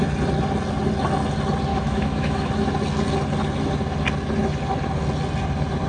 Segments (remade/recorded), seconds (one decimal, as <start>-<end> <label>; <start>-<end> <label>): 0.0-1.7 recorded; 1.7-2.5 remade; 2.5-5.9 recorded

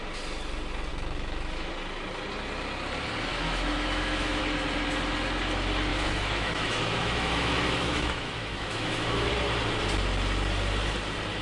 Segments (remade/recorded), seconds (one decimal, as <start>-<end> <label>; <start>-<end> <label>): 0.0-0.9 recorded; 0.9-1.7 remade; 1.7-3.3 recorded; 3.3-4.4 remade; 4.4-5.9 recorded; 5.9-9.3 remade; 9.3-11.4 recorded

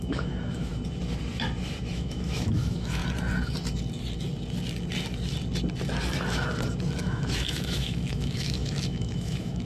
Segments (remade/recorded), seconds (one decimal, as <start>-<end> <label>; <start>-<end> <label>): 0.0-0.7 remade; 0.7-1.9 recorded; 1.9-3.0 remade; 3.0-7.0 recorded; 7.0-9.7 remade

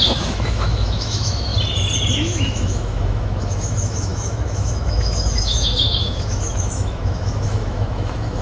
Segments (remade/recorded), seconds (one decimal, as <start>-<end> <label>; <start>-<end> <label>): 0.0-1.5 remade; 1.5-2.1 recorded; 2.1-8.4 remade